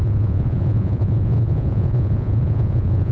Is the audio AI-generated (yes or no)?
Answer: yes